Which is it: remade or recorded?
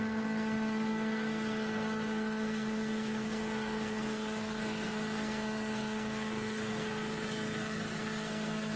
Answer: remade